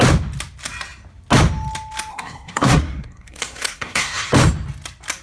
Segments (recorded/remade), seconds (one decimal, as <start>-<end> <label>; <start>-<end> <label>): 0.0-2.1 recorded; 2.1-4.3 remade; 4.3-5.2 recorded